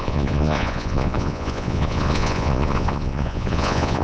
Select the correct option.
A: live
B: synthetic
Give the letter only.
B